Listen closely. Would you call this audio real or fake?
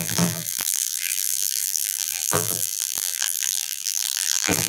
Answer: fake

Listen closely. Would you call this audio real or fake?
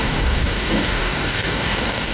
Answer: fake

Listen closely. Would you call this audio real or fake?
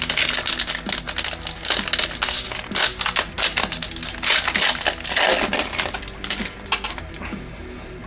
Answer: real